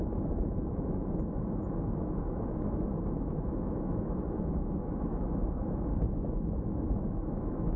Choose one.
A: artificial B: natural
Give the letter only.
A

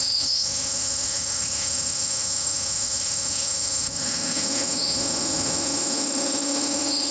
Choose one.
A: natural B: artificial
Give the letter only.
B